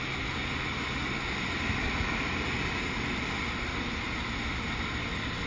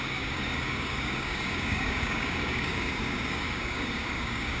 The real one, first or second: first